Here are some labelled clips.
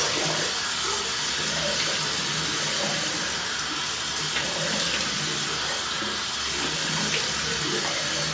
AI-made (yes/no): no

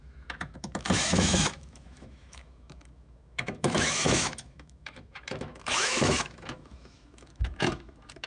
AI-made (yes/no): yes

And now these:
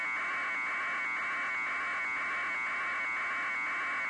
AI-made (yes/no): no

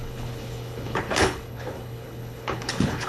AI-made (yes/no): yes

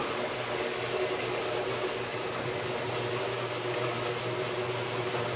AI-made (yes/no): no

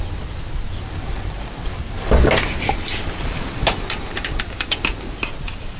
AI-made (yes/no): no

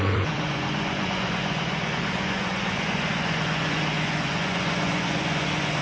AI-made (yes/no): yes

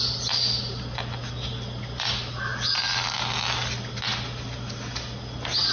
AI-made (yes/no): no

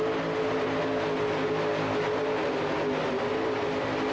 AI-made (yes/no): no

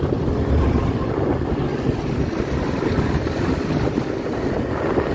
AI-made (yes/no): no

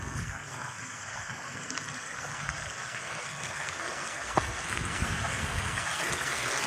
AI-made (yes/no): yes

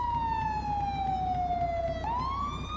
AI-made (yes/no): no